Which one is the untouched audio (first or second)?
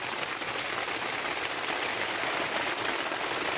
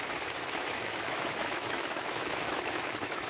first